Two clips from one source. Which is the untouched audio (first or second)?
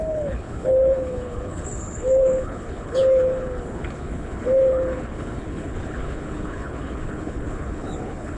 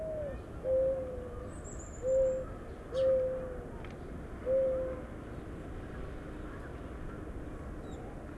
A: second